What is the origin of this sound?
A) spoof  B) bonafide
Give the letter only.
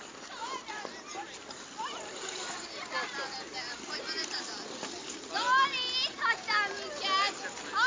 B